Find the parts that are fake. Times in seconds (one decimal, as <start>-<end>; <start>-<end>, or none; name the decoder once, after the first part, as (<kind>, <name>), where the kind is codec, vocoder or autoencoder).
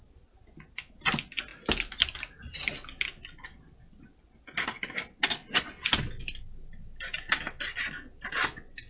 none